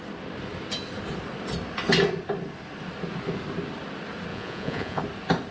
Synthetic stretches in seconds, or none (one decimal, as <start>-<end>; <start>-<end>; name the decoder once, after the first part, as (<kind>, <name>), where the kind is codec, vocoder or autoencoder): 4.3-5.0 (vocoder, Vocos)